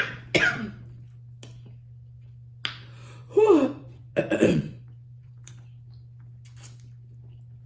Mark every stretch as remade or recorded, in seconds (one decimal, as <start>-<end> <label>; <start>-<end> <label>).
0.0-3.2 recorded; 3.2-5.5 remade; 5.5-7.7 recorded